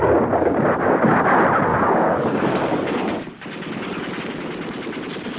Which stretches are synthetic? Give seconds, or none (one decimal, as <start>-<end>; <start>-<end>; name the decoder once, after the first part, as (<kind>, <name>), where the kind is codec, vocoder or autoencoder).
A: 1.7-4.2 (codec, DAC)